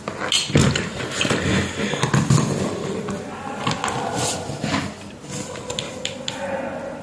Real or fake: real